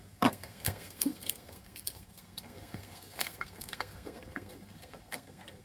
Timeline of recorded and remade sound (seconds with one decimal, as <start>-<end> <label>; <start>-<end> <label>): 0.0-5.6 remade

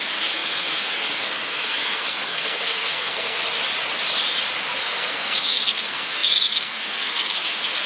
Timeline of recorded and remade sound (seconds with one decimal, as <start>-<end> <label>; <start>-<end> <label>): 0.0-3.4 remade; 3.4-4.8 recorded; 4.8-7.9 remade

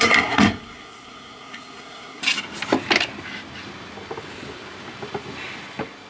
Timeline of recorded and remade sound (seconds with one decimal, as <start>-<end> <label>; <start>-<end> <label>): 0.0-2.2 remade; 2.2-6.1 recorded

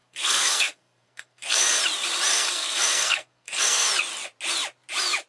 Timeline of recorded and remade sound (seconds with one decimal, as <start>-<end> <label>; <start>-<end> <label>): 0.0-1.8 remade; 1.8-2.3 recorded; 2.3-3.9 remade; 3.9-5.3 recorded